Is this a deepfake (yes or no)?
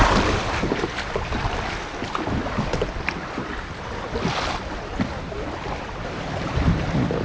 yes